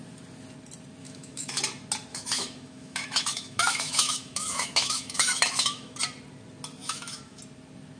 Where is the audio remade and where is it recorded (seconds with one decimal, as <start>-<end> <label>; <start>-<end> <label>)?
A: 0.0-1.0 recorded; 1.0-1.6 remade; 1.6-2.1 recorded; 2.1-6.0 remade; 6.0-6.8 recorded; 6.8-7.4 remade; 7.4-8.0 recorded